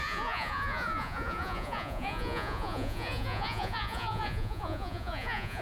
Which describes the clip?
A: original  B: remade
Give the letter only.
B